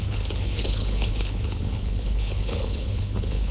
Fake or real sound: fake